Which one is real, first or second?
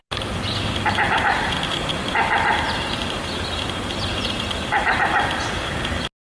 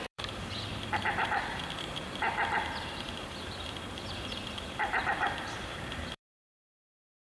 first